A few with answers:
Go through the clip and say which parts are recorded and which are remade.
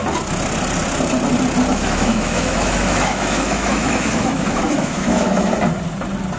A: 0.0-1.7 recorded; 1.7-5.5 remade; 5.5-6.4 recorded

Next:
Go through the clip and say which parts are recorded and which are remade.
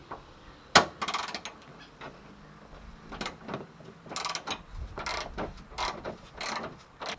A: 0.0-7.2 recorded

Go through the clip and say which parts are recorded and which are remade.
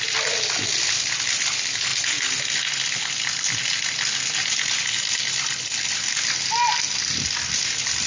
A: 0.0-8.1 recorded